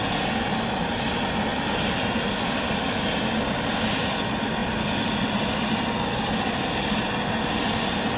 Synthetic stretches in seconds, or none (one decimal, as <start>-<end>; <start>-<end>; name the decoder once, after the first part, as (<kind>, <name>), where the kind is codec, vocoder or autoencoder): none